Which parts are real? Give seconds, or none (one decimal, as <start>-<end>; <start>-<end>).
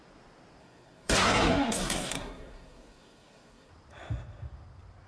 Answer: 0.0-0.6; 3.7-5.1